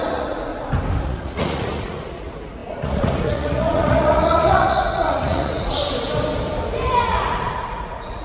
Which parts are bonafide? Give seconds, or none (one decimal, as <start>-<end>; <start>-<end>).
0.5-1.0; 5.8-7.0